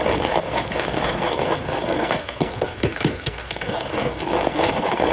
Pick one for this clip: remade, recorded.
remade